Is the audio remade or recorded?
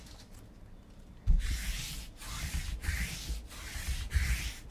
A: recorded